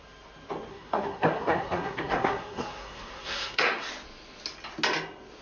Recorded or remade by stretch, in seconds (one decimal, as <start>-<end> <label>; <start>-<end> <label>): 0.0-0.7 recorded; 0.7-3.9 remade; 3.9-5.4 recorded